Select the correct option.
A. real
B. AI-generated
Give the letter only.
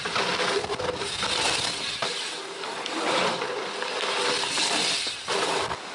A